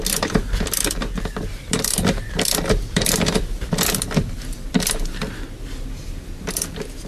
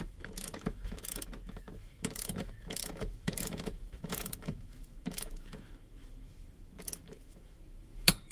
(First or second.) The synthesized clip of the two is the second